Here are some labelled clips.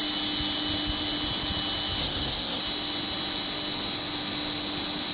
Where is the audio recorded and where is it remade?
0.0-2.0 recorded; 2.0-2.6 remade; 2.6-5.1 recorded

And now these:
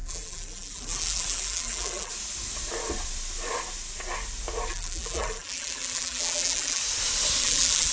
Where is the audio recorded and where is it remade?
0.0-2.1 remade; 2.1-4.7 recorded; 4.7-6.8 remade; 6.8-7.4 recorded; 7.4-7.9 remade

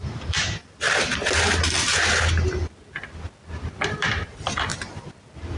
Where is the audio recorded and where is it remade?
0.0-0.6 remade; 0.6-3.9 recorded; 3.9-4.7 remade; 4.7-5.6 recorded

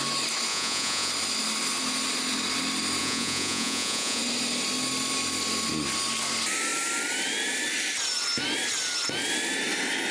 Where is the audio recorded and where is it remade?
0.0-0.5 recorded; 0.5-1.1 remade; 1.1-3.0 recorded; 3.0-4.2 remade; 4.2-10.1 recorded